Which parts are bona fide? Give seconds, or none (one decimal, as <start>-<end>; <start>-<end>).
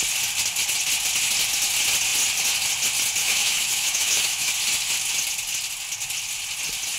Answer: 0.0-3.2; 4.5-7.0